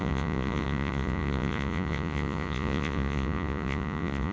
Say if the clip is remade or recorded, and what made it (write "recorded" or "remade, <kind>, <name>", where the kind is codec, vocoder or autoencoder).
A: remade, vocoder, Vocos